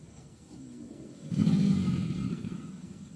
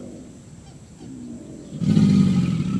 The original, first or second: second